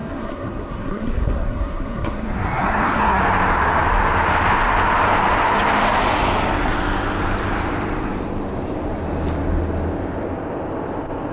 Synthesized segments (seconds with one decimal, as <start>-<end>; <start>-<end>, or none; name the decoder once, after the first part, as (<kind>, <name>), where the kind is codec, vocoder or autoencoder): 0.0-3.2 (codec, SNAC)